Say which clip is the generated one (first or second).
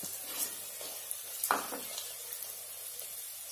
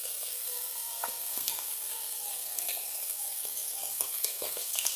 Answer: second